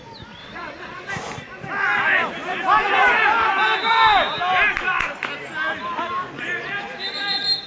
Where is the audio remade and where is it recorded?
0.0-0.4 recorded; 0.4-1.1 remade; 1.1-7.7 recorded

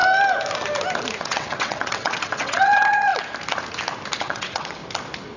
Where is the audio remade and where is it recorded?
0.0-1.2 recorded; 1.2-3.1 remade; 3.1-4.2 recorded; 4.2-4.8 remade; 4.8-5.4 recorded

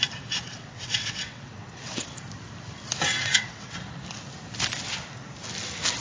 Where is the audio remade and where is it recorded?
0.0-0.5 recorded; 0.5-2.1 remade; 2.1-3.1 recorded; 3.1-3.8 remade; 3.8-6.0 recorded

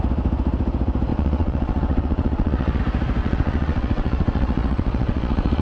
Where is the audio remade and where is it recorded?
0.0-1.1 recorded; 1.1-2.8 remade; 2.8-3.2 recorded; 3.2-5.6 remade

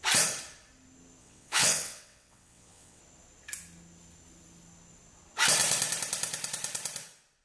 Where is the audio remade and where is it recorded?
0.0-1.2 recorded; 1.2-3.0 remade; 3.0-7.4 recorded